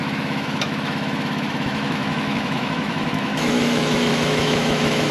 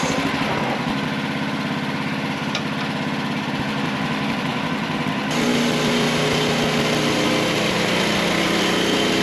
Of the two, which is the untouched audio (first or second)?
second